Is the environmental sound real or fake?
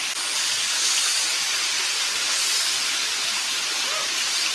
real